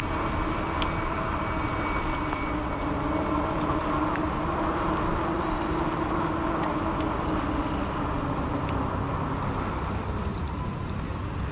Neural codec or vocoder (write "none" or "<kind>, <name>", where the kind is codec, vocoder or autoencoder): none